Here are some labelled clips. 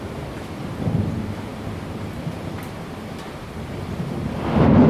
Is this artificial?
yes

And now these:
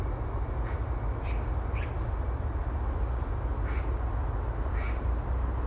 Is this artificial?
no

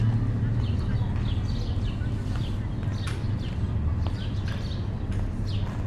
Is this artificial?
no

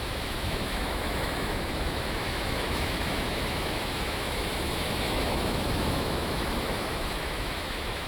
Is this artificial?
yes